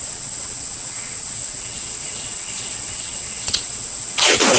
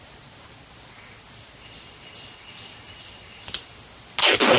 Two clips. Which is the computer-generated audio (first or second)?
first